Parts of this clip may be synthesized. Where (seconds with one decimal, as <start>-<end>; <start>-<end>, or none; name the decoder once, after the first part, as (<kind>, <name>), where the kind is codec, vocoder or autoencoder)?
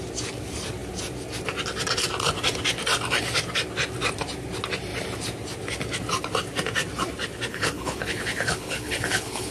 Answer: 7.5-9.5 (codec, HILCodec)